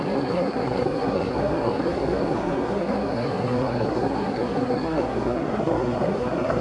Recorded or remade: remade